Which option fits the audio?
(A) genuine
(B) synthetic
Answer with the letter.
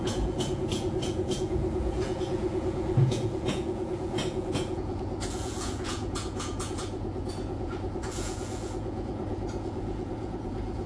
B